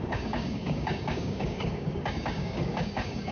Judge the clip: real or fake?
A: fake